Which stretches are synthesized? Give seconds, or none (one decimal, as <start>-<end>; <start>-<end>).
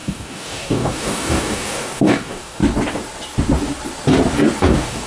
0.0-2.6; 4.6-5.1